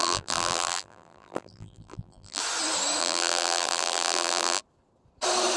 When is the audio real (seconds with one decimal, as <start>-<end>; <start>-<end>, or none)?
2.4-3.0; 4.6-5.6